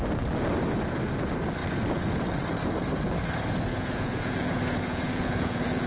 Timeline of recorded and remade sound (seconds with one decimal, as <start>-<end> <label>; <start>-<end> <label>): 0.0-3.7 recorded; 3.7-5.9 remade